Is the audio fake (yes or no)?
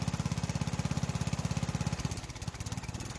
no